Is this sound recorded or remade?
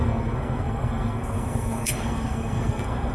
remade